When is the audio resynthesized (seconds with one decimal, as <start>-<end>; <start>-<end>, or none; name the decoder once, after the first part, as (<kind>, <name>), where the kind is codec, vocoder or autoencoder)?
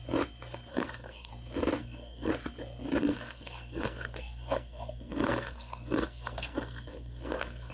0.7-1.3 (codec, SNAC); 1.8-2.3; 3.0-7.7